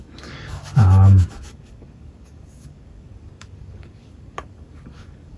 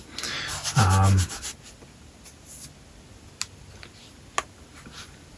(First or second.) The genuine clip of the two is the second